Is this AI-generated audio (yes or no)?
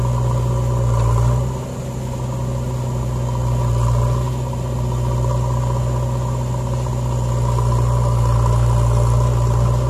no